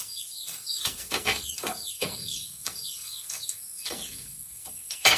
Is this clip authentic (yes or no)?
no